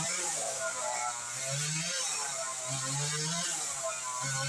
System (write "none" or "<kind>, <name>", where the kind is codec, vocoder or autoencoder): none